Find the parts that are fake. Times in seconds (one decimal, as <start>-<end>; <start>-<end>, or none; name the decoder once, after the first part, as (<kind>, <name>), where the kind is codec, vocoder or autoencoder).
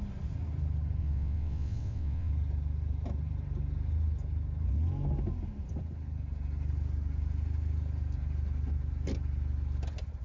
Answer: 1.0-2.3 (vocoder, WaveNeXt)